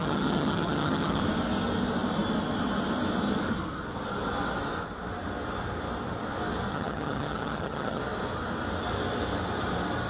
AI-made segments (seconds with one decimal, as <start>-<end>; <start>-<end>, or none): 0.0-1.2; 6.7-8.0